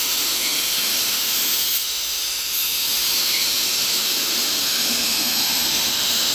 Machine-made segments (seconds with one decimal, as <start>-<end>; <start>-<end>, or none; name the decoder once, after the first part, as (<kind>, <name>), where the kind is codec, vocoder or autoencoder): 0.0-6.3 (autoencoder, DAC-VAE)